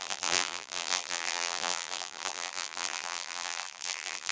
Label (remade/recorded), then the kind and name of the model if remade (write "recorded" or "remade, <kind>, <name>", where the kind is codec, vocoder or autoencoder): remade, vocoder, BigVGAN v2